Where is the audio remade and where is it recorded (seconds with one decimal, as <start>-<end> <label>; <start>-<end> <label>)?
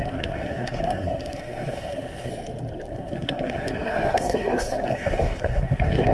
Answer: 0.0-2.3 remade; 2.3-2.9 recorded; 2.9-6.1 remade